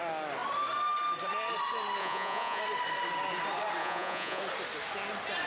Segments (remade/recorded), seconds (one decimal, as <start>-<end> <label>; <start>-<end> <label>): 0.0-2.0 recorded; 2.0-2.6 remade; 2.6-3.8 recorded; 3.8-4.4 remade; 4.4-5.5 recorded